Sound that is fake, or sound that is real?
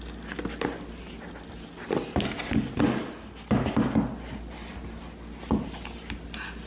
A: real